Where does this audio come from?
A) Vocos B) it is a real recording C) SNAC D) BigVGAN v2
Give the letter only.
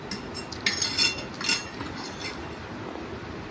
B